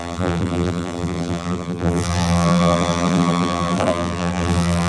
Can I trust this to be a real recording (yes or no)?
no